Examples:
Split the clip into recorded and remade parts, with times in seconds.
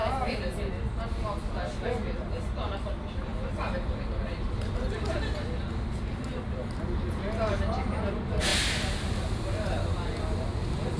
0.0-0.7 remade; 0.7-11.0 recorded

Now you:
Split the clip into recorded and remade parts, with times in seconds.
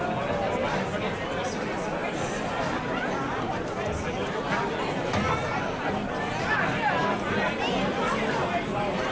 0.0-2.0 recorded; 2.0-3.4 remade; 3.4-9.1 recorded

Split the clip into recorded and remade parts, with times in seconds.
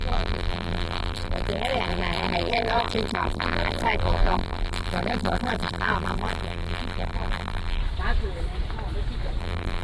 0.0-7.8 remade; 7.8-9.4 recorded; 9.4-9.8 remade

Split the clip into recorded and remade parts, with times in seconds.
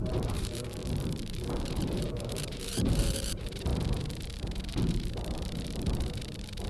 0.0-6.7 remade